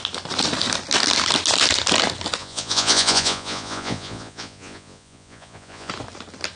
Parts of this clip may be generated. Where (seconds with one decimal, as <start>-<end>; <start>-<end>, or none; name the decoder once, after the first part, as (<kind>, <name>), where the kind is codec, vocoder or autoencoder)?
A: 2.4-5.9 (vocoder, Vocos)